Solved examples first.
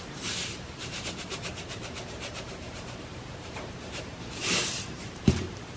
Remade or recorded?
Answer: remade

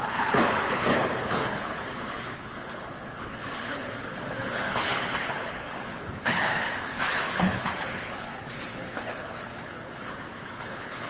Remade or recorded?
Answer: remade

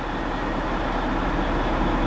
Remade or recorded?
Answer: recorded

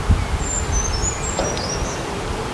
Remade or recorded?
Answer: recorded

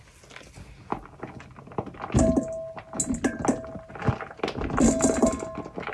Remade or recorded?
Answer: recorded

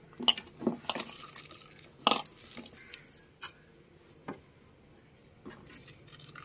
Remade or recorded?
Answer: recorded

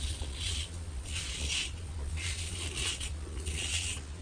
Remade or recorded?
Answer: remade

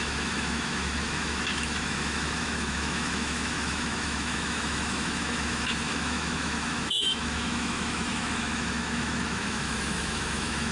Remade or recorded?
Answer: remade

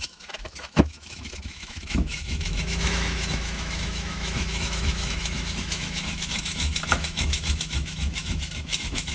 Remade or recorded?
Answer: remade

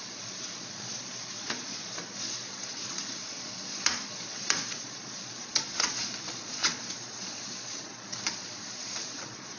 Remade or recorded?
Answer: remade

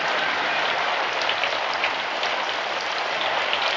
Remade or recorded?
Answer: remade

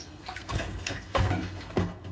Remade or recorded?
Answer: remade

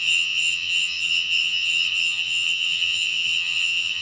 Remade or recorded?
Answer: remade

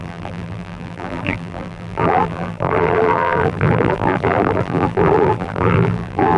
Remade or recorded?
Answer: remade